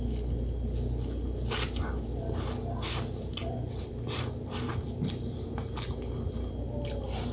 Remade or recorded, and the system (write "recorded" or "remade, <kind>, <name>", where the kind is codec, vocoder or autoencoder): recorded